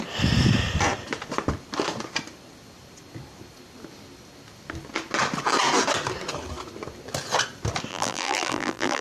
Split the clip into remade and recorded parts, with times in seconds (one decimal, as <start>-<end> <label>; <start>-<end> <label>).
0.0-7.9 recorded; 7.9-9.0 remade